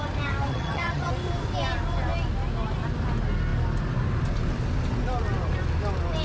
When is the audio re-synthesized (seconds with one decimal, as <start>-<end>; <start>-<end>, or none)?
0.5-1.1